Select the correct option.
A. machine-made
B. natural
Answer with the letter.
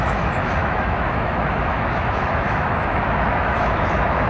A